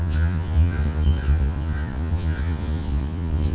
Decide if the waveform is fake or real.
fake